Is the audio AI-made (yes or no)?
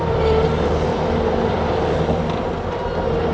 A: yes